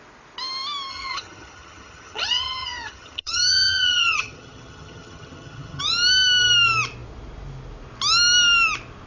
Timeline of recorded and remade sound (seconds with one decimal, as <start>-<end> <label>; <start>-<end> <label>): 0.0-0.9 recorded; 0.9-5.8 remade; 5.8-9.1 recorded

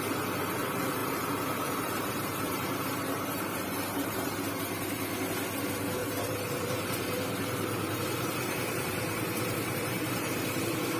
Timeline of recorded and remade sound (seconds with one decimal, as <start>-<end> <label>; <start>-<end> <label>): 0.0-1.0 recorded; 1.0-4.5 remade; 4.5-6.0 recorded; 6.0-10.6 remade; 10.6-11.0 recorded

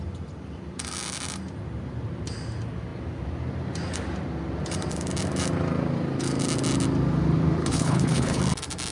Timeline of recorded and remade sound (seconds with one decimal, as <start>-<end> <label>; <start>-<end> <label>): 0.0-7.6 recorded; 7.6-8.4 remade; 8.4-8.9 recorded

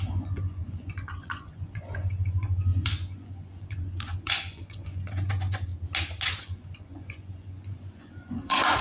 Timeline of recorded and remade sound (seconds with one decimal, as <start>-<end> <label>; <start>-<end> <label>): 0.0-5.7 remade; 5.7-6.4 recorded; 6.4-8.8 remade

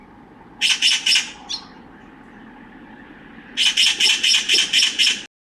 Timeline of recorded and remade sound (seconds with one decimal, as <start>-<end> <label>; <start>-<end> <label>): 0.0-5.4 recorded

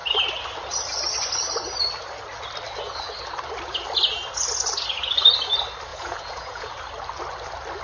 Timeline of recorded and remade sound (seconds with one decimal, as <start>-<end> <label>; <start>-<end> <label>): 0.0-5.9 recorded; 5.9-6.7 remade; 6.7-7.8 recorded

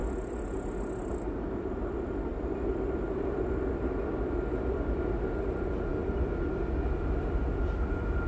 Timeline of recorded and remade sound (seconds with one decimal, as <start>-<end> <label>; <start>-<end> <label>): 0.0-8.3 recorded

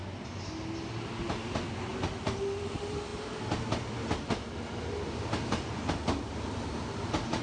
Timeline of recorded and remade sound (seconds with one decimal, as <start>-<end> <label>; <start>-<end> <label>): 0.0-7.4 recorded